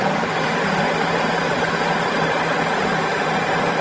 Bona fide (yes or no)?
no